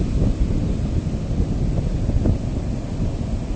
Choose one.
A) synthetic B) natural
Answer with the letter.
B